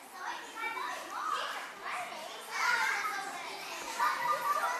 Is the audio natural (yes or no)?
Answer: yes